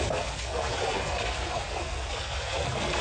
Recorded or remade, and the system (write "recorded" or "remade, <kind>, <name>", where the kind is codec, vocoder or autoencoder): remade, codec, SNAC